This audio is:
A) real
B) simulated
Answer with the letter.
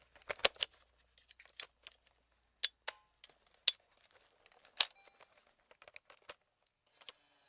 A